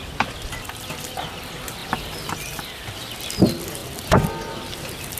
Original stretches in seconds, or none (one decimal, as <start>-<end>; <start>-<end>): 0.0-5.2